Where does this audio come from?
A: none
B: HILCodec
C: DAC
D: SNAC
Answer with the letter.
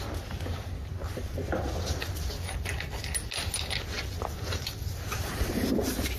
A